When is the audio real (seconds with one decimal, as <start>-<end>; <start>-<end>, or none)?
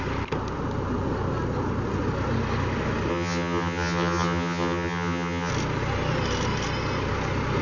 0.0-3.1; 5.5-7.6